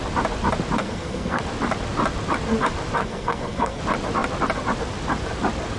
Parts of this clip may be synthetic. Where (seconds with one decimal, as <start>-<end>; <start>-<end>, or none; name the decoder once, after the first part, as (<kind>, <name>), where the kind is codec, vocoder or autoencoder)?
0.8-1.4 (codec, SNAC); 3.0-3.8